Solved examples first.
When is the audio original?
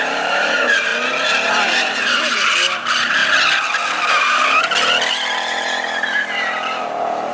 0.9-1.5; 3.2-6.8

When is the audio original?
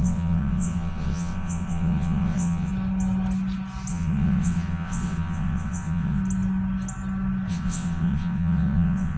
2.7-3.9; 6.2-7.5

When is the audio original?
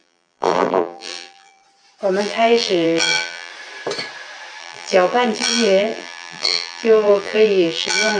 1.6-2.2; 3.5-4.6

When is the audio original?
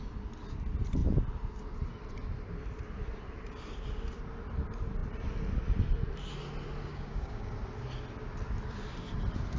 0.0-6.9; 7.5-9.6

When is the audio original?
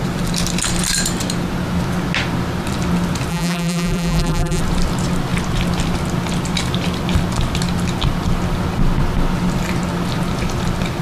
0.0-3.3; 4.6-11.0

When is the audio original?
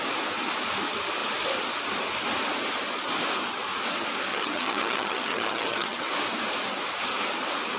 0.0-4.3; 6.1-7.8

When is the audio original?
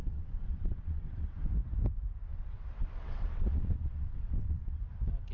1.5-2.3; 4.8-5.3